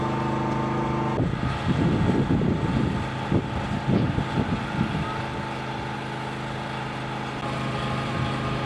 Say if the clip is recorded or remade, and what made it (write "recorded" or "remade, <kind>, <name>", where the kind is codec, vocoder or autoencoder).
recorded